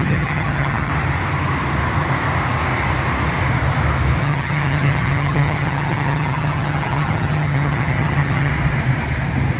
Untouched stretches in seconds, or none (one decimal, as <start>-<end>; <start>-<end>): 0.9-4.2; 8.5-9.6